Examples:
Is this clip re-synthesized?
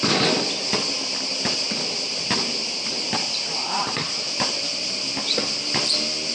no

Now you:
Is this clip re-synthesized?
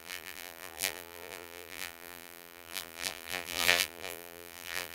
yes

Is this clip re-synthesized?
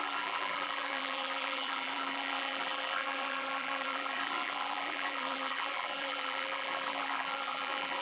yes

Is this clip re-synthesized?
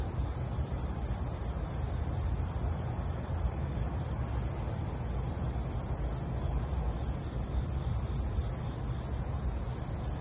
no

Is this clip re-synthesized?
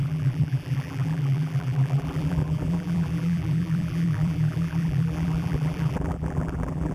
yes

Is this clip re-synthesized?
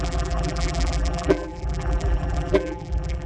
yes